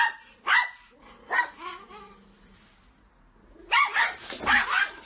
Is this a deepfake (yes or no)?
no